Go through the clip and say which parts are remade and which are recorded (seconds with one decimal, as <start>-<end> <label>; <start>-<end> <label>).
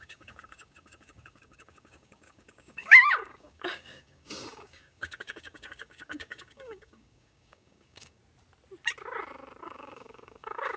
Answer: 0.0-8.2 remade; 8.2-9.6 recorded; 9.6-10.8 remade